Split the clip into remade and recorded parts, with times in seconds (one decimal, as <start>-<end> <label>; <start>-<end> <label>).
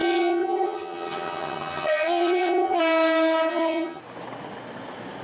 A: 0.0-2.8 remade; 2.8-3.5 recorded; 3.5-4.0 remade; 4.0-5.2 recorded